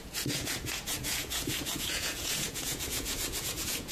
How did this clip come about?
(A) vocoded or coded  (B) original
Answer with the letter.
A